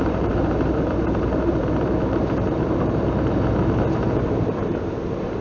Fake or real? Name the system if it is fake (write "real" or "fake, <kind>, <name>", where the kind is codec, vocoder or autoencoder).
fake, vocoder, BigVGAN v2